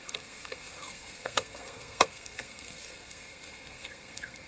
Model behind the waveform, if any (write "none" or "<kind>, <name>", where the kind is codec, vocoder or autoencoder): codec, SNAC